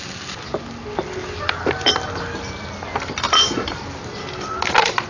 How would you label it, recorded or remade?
recorded